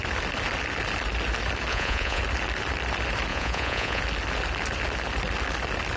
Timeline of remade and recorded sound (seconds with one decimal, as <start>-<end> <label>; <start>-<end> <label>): 0.0-1.7 recorded; 1.7-2.2 remade; 2.2-3.3 recorded; 3.3-4.0 remade; 4.0-6.0 recorded